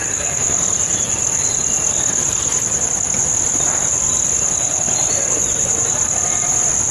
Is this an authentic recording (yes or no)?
no